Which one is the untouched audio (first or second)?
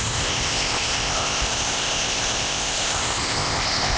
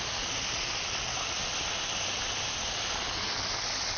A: second